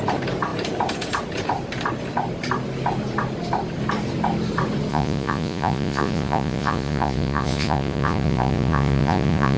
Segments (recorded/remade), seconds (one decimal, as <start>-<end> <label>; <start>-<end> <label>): 0.0-4.9 recorded; 4.9-9.6 remade